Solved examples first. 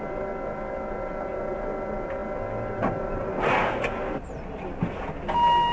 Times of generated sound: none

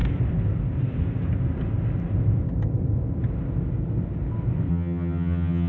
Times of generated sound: 4.7-5.7 (vocoder, HiFi-GAN)

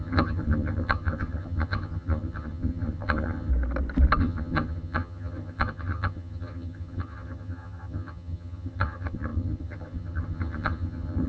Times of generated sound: 0.0-3.5 (vocoder, HiFi-GAN); 4.2-11.3

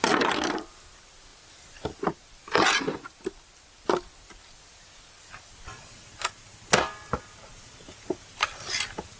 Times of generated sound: none